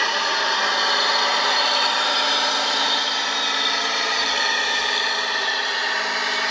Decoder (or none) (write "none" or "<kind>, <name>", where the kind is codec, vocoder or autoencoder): vocoder, BigVGAN v2